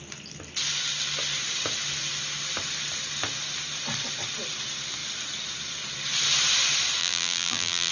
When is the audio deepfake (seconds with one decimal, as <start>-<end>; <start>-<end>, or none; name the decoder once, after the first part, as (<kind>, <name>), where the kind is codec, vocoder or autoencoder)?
7.0-7.9 (vocoder, BigVGAN v2)